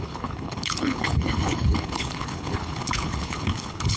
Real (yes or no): no